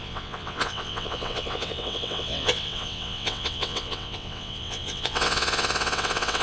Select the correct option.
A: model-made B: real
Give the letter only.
A